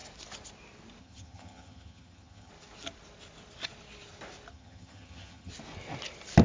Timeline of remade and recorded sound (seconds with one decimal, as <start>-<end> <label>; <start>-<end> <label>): 0.0-1.0 recorded; 1.0-2.5 remade; 2.5-4.5 recorded; 4.5-5.5 remade; 5.5-6.4 recorded